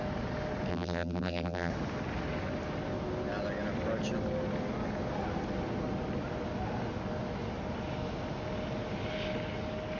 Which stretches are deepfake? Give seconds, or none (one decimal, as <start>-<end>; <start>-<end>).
0.7-1.7